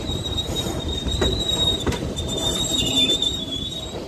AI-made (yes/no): yes